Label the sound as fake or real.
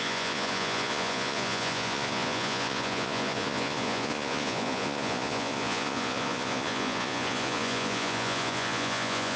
fake